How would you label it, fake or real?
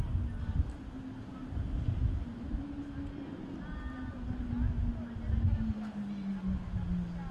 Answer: real